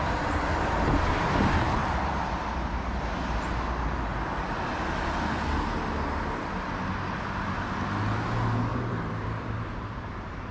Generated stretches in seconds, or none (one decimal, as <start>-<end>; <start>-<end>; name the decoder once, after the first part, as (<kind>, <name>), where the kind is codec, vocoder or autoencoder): 1.8-3.6 (vocoder, BigVGAN v2); 8.7-10.5